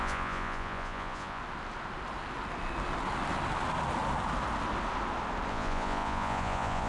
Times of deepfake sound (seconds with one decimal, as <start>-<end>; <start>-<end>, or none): 0.0-1.4; 5.5-6.9